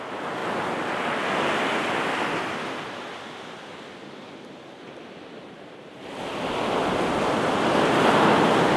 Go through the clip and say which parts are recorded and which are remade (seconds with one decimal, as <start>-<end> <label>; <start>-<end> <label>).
0.0-8.8 recorded